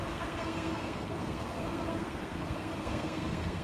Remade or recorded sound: remade